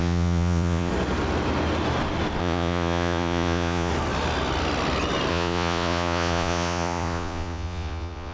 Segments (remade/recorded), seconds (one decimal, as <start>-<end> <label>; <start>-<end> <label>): 0.0-0.9 remade; 0.9-2.4 recorded; 2.4-3.9 remade; 3.9-5.3 recorded; 5.3-8.3 remade